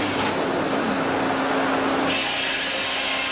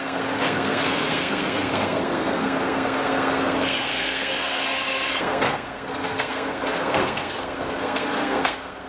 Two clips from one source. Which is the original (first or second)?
first